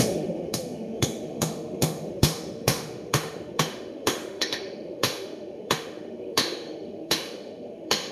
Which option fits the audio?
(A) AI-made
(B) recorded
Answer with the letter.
A